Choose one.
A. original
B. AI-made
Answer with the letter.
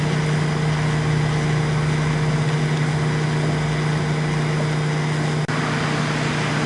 A